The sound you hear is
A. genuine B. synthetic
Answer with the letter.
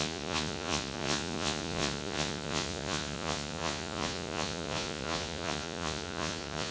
B